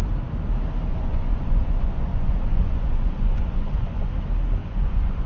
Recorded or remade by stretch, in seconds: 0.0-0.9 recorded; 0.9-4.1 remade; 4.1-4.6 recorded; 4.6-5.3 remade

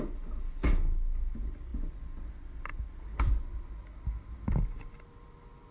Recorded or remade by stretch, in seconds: 0.0-5.7 recorded

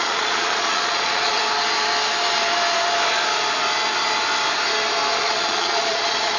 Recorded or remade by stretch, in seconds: 0.0-1.4 remade; 1.4-5.2 recorded; 5.2-6.4 remade

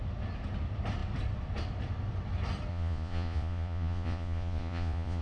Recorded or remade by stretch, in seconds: 0.0-2.7 recorded; 2.7-5.2 remade

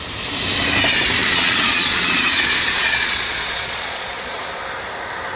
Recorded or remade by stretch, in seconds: 0.0-1.2 recorded; 1.2-4.4 remade; 4.4-5.4 recorded

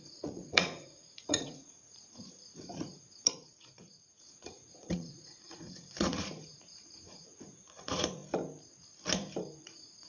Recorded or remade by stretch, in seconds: 0.0-8.2 remade; 8.2-9.6 recorded; 9.6-10.1 remade

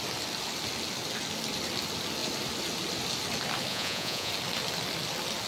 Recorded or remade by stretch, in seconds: 0.0-3.7 recorded; 3.7-4.3 remade; 4.3-5.5 recorded